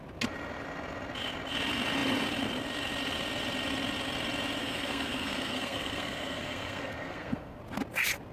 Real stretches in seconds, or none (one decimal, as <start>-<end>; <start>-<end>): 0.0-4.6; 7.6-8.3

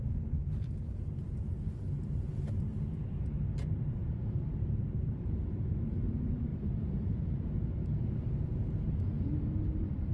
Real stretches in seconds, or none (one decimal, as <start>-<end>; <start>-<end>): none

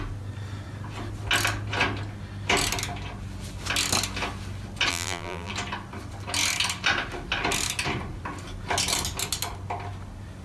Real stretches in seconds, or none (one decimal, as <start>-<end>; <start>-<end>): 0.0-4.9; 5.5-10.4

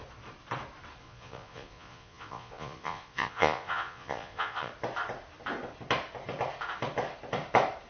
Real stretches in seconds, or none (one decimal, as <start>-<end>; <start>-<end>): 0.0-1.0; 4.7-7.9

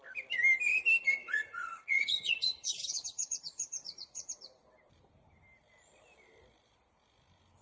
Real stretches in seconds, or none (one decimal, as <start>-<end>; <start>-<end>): 0.0-1.2; 4.3-7.6